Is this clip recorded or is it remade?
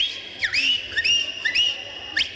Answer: recorded